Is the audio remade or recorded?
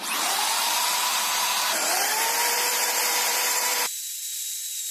remade